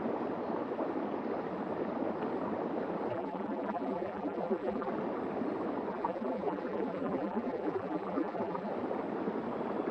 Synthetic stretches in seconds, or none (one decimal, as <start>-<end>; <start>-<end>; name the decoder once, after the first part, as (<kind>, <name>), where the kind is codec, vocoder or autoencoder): 3.1-4.9 (vocoder, BigVGAN v2); 5.9-8.7